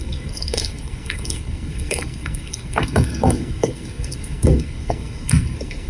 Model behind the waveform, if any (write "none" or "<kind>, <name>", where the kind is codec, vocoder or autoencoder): codec, SNAC